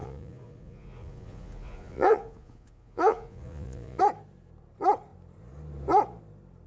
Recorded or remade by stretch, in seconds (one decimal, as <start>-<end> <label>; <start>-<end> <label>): 0.0-4.0 remade; 4.0-6.7 recorded